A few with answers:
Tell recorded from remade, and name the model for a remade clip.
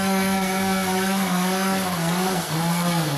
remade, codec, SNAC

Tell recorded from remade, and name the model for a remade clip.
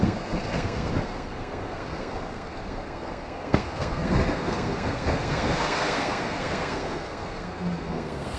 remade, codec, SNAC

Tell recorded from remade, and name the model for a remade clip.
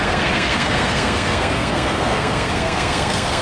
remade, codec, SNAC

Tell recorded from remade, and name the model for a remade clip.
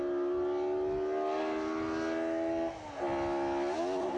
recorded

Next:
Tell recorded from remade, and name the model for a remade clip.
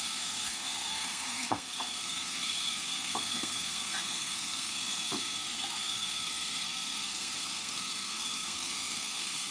remade, codec, SNAC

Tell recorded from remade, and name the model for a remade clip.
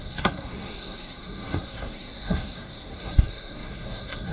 remade, codec, SNAC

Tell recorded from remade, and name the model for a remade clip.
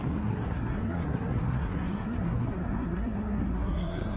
remade, codec, SNAC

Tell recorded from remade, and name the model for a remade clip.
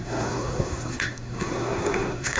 remade, codec, SNAC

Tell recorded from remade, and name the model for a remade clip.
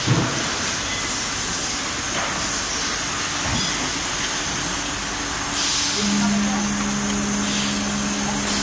recorded